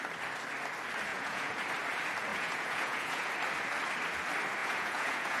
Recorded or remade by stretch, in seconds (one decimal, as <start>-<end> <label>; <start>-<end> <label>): 0.0-1.1 recorded; 1.1-1.6 remade; 1.6-2.3 recorded; 2.3-3.3 remade; 3.3-4.6 recorded; 4.6-5.4 remade